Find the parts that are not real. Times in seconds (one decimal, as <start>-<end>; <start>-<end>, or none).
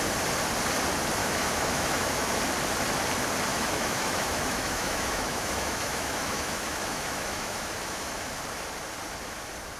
1.2-2.3; 3.5-8.4